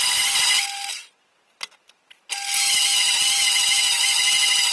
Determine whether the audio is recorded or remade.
recorded